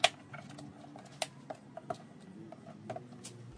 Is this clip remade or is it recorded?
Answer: recorded